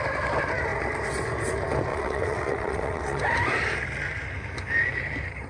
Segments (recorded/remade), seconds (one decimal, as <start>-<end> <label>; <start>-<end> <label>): 0.0-1.9 recorded; 1.9-3.2 remade; 3.2-5.5 recorded